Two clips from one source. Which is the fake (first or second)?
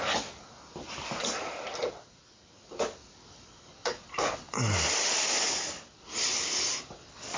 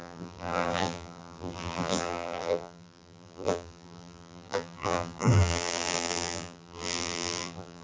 second